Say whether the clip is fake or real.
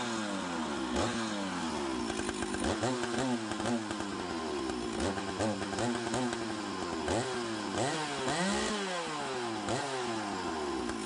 real